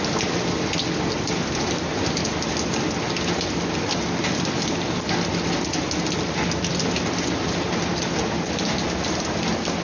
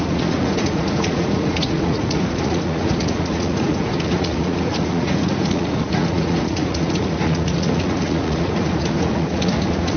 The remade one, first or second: second